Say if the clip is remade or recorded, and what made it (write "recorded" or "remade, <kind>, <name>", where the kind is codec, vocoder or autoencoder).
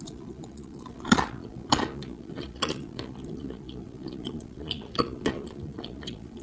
remade, vocoder, Vocos